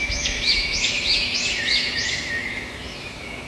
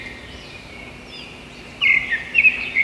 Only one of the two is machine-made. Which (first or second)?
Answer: first